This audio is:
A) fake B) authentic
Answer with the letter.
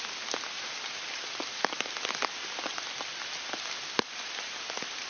B